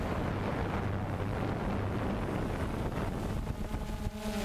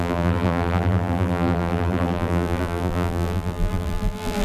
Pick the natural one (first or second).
first